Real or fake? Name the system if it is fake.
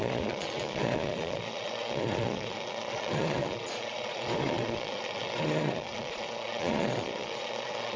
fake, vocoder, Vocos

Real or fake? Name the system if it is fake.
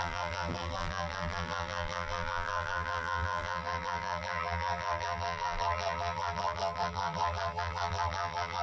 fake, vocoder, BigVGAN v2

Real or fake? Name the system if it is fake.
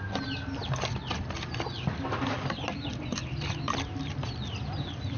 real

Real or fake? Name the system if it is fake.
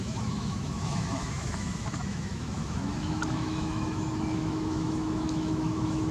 fake, autoencoder, DAC-VAE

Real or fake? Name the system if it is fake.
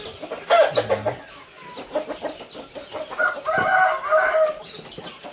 real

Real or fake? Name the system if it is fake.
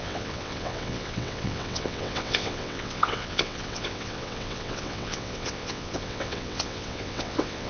fake, vocoder, WaveNeXt